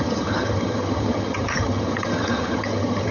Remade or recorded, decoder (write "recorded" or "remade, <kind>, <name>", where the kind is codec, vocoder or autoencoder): remade, vocoder, HiFi-GAN